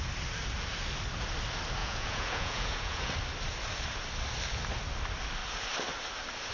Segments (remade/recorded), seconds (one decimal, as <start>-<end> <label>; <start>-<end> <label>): 0.0-1.8 recorded; 1.8-3.1 remade; 3.1-6.5 recorded